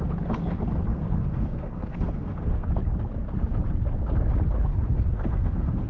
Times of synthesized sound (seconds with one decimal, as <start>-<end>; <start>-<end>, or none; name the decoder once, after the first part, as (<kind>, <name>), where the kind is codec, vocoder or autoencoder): 0.9-2.7 (codec, SNAC); 4.7-5.9